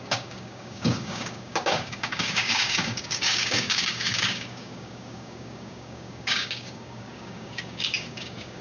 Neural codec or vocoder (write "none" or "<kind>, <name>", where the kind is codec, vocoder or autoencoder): codec, DAC